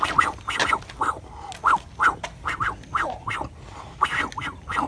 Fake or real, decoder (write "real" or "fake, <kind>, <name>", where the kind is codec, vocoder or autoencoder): real